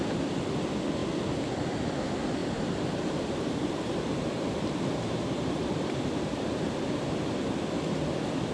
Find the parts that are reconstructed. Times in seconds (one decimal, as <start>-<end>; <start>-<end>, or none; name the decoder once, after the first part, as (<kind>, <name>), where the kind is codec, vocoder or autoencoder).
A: 2.4-6.7 (vocoder, BigVGAN v2)